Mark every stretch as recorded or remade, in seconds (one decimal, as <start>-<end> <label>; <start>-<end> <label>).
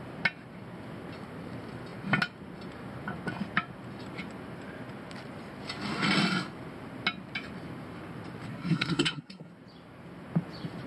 0.0-8.5 recorded; 8.5-9.5 remade; 9.5-10.9 recorded